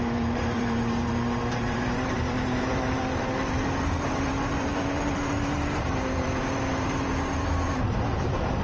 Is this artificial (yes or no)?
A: yes